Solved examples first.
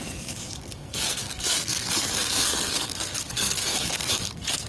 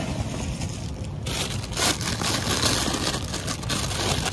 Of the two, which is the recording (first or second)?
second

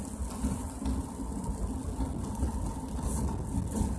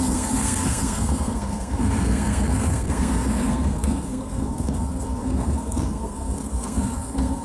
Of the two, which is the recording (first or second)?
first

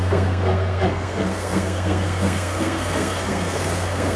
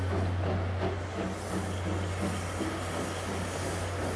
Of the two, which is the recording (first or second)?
second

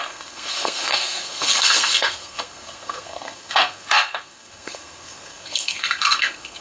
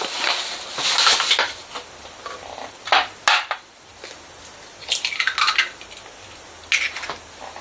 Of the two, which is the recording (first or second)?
second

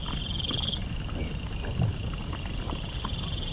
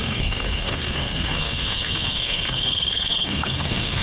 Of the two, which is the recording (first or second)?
first